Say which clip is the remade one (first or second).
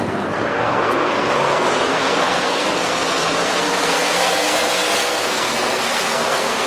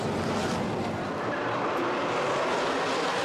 first